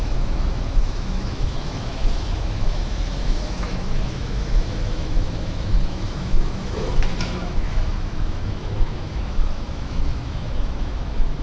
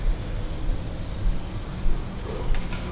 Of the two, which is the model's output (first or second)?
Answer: first